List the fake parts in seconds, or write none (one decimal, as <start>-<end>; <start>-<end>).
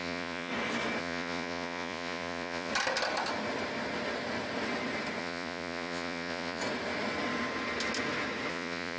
0.0-0.5; 1.0-2.7; 5.2-6.6; 8.5-9.0